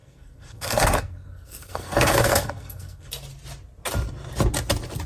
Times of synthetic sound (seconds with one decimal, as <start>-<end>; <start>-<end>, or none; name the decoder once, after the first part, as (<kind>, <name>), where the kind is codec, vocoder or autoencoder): 0.0-3.1 (codec, SNAC)